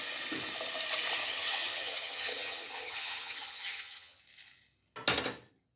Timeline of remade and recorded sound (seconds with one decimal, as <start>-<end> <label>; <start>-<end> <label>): 0.0-1.2 recorded; 1.2-4.2 remade; 4.2-5.8 recorded

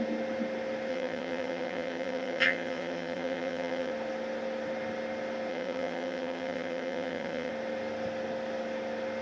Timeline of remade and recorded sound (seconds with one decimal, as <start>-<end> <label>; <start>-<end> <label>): 0.0-0.9 recorded; 0.9-3.9 remade; 3.9-5.5 recorded; 5.5-7.5 remade; 7.5-9.2 recorded

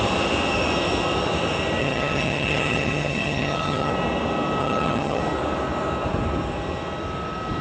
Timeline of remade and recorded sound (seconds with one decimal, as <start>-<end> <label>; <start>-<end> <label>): 0.0-1.8 recorded; 1.8-3.9 remade; 3.9-4.6 recorded; 4.6-5.2 remade; 5.2-7.6 recorded